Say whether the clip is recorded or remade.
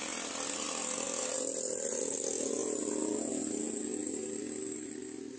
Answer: recorded